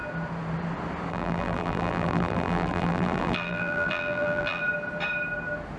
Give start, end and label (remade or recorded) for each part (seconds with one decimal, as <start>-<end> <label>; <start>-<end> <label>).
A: 0.0-1.1 recorded; 1.1-4.6 remade; 4.6-5.8 recorded